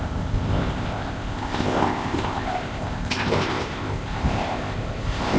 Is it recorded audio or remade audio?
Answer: remade